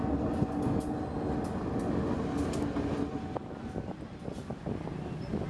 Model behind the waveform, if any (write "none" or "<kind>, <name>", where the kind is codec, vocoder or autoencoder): none